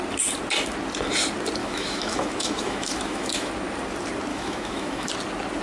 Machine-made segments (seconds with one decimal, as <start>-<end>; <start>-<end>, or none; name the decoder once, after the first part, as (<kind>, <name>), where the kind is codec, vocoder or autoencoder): 1.6-3.5 (autoencoder, DAC-VAE); 4.3-5.1